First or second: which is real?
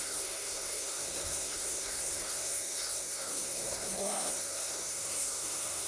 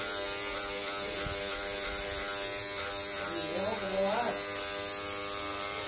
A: second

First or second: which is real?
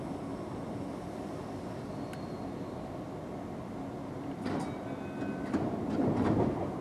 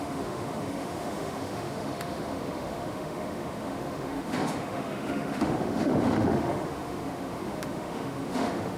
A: first